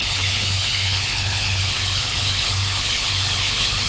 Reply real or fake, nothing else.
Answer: fake